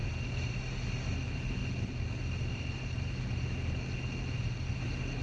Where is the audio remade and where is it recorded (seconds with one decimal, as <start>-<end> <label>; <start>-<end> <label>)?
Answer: 0.0-5.2 recorded